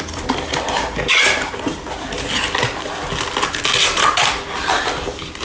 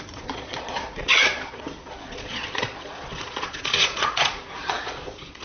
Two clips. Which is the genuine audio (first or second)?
first